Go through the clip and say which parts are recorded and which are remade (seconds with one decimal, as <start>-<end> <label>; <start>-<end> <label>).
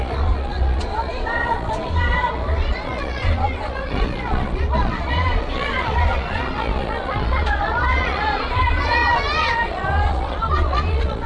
0.0-11.3 remade